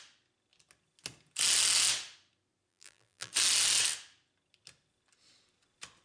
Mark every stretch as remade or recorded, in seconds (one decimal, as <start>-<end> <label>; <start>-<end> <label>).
0.0-2.7 recorded; 2.7-3.3 remade; 3.3-6.0 recorded